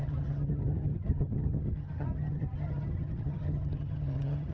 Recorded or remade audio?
remade